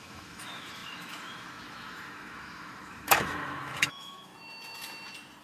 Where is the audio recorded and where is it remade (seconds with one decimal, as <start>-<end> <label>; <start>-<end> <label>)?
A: 0.0-4.3 remade; 4.3-5.4 recorded